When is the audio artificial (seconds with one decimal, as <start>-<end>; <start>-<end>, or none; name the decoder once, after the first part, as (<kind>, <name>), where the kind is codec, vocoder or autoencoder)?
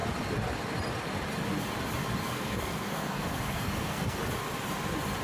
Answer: 2.2-4.2 (codec, SNAC)